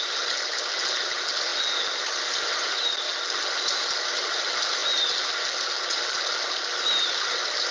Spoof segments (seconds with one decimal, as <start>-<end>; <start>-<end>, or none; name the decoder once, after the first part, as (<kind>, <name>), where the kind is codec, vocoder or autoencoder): none

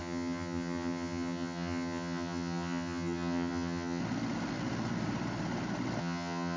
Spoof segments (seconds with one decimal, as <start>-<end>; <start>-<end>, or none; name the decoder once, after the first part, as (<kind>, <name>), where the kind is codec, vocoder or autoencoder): 0.0-4.0 (vocoder, HiFi-GAN); 6.0-6.6